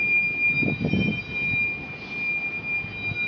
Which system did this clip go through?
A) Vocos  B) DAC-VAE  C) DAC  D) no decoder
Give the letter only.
D